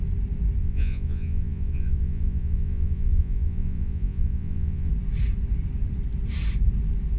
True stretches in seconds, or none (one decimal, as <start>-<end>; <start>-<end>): 0.0-0.6; 4.9-7.2